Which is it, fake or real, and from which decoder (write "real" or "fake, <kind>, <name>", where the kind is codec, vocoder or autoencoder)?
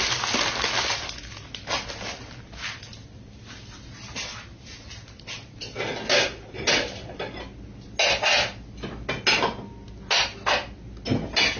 real